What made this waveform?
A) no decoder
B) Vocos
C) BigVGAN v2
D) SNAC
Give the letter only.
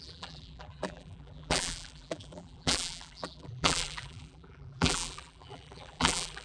C